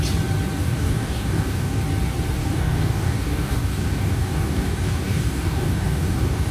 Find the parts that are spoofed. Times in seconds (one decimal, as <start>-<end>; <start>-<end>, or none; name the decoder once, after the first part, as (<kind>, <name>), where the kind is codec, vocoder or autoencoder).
0.6-1.8 (codec, DAC); 2.4-6.5